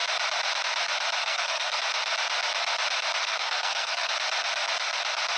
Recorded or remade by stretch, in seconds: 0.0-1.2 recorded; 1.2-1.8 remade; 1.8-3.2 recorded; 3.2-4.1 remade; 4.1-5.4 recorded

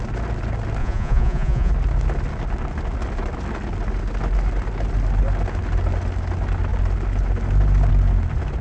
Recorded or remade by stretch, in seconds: 0.0-0.8 recorded; 0.8-1.7 remade; 1.7-8.6 recorded

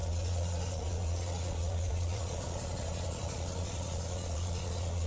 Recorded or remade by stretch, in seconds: 0.0-5.1 remade

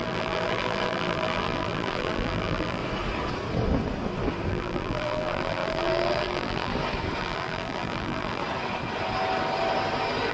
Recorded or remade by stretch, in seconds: 0.0-2.8 remade; 2.8-4.5 recorded; 4.5-6.7 remade; 6.7-7.2 recorded; 7.2-8.4 remade; 8.4-10.3 recorded

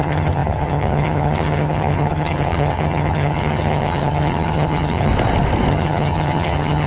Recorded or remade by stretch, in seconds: 0.0-5.1 remade; 5.1-5.7 recorded; 5.7-6.9 remade

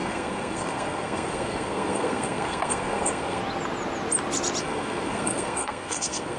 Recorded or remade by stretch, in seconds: 0.0-3.4 remade; 3.4-4.6 recorded; 4.6-6.4 remade

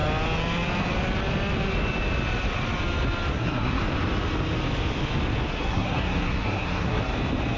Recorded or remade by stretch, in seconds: 0.0-3.3 recorded; 3.3-3.8 remade; 3.8-5.5 recorded; 5.5-7.0 remade; 7.0-7.6 recorded